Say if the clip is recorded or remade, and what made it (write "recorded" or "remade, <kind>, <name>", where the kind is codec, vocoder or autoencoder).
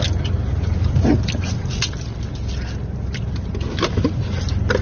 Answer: recorded